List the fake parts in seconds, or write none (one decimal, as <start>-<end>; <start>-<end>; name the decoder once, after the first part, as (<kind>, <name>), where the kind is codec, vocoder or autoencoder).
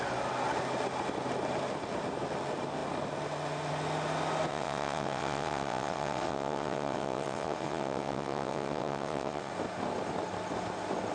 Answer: 4.5-9.5 (vocoder, WaveNeXt)